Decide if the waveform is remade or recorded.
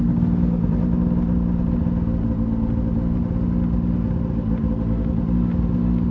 recorded